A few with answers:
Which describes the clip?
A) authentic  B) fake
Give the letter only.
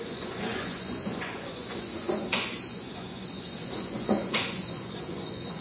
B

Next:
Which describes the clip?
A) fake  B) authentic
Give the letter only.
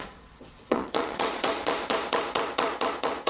A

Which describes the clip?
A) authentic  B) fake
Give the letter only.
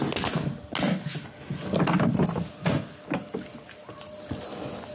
A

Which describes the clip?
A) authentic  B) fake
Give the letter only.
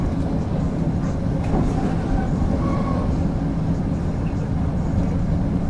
A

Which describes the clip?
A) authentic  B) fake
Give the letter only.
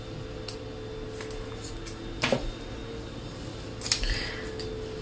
A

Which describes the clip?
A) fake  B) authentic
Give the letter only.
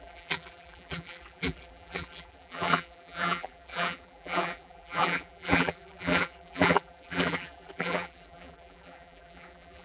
A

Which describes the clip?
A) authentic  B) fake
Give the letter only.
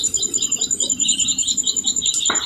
B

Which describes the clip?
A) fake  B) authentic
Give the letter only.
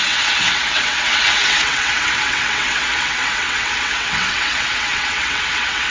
A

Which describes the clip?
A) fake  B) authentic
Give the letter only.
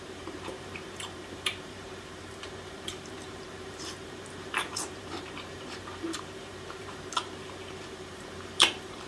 A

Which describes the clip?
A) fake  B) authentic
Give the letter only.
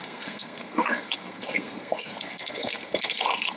A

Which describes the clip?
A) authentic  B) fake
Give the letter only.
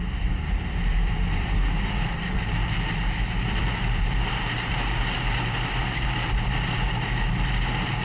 B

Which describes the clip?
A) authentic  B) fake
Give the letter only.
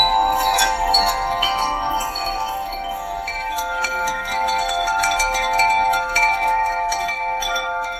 B